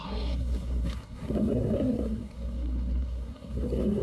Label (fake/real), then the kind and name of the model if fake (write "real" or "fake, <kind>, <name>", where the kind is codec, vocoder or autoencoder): fake, codec, SNAC